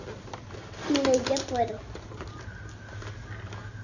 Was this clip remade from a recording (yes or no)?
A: no